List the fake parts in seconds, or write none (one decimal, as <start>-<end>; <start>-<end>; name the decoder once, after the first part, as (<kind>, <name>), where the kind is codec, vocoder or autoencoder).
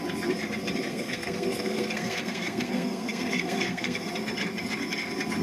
0.9-4.1 (codec, SNAC)